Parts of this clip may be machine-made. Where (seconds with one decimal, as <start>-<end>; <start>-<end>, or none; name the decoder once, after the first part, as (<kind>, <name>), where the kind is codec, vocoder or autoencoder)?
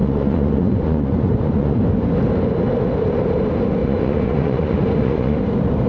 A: 0.0-1.8 (vocoder, Vocos); 3.8-5.4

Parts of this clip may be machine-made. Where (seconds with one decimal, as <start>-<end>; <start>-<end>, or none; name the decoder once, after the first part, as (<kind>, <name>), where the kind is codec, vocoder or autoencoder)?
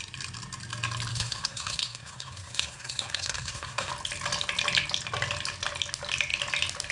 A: 1.1-3.9 (codec, SNAC)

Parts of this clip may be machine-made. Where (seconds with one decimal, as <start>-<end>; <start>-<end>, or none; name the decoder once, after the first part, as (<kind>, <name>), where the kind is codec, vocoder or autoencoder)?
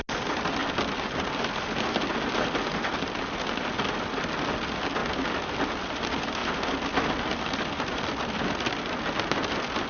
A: none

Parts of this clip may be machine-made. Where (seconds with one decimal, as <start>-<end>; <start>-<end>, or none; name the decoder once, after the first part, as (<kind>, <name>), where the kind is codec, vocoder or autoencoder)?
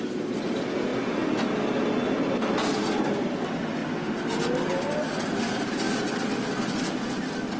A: none